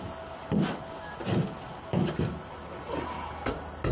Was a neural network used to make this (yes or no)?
no